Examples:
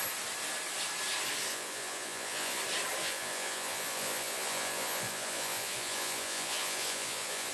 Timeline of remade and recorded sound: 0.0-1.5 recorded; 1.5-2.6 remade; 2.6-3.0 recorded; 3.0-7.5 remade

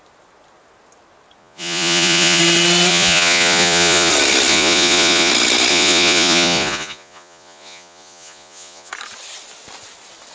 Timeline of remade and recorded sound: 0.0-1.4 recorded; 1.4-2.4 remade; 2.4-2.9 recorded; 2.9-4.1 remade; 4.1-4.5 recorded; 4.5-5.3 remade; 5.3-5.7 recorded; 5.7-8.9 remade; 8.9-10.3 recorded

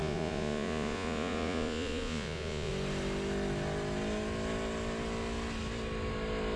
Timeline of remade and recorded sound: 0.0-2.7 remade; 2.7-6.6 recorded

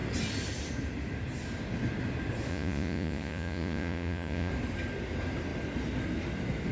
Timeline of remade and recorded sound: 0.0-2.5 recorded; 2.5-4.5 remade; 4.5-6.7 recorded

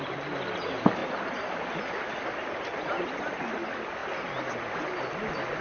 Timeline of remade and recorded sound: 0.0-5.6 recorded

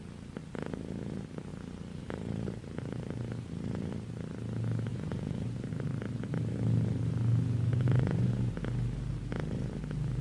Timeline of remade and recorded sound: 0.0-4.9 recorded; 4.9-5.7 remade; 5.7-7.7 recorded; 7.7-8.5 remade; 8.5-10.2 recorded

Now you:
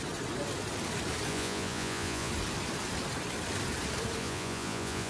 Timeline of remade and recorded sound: 0.0-1.3 recorded; 1.3-2.3 remade; 2.3-4.2 recorded; 4.2-5.1 remade

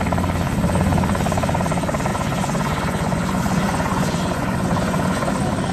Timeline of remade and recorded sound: 0.0-2.1 recorded; 2.1-5.3 remade; 5.3-5.7 recorded